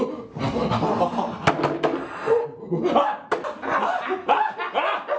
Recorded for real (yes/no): yes